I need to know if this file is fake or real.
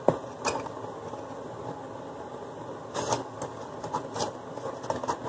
real